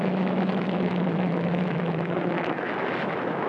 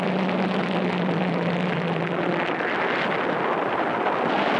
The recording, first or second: second